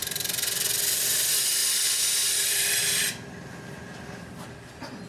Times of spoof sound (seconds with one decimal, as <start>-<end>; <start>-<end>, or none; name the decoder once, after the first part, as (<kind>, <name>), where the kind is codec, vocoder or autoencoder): none